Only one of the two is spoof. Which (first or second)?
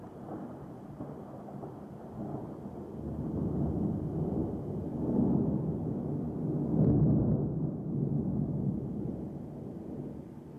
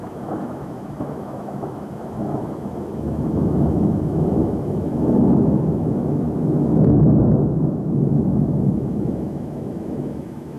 second